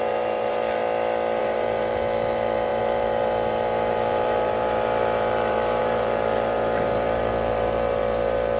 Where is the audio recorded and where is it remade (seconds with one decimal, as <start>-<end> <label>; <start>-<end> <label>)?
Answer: 0.0-0.8 remade; 0.8-1.4 recorded; 1.4-8.6 remade